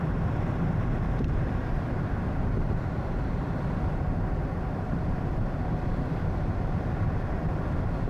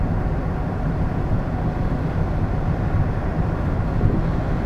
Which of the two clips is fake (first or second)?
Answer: first